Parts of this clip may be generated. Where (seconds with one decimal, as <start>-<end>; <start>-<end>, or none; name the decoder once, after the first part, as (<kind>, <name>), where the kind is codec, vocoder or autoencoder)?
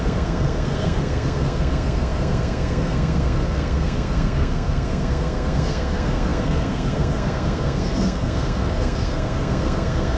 0.0-10.2 (codec, SNAC)